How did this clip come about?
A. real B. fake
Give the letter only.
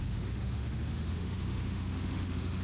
B